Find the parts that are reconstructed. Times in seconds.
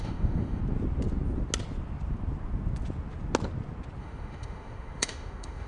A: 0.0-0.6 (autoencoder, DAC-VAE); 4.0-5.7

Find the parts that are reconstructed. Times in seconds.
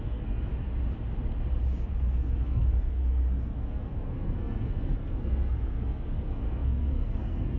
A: 0.0-0.5 (codec, SNAC); 1.9-7.6